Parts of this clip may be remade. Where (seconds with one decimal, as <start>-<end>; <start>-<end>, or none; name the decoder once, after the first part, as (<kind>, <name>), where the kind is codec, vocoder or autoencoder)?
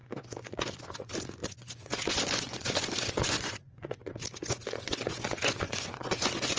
0.0-6.6 (vocoder, Vocos)